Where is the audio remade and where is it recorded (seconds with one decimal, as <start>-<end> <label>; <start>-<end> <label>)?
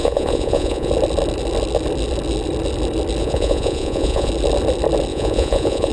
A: 0.0-0.9 remade; 0.9-3.2 recorded; 3.2-4.3 remade; 4.3-5.1 recorded; 5.1-5.9 remade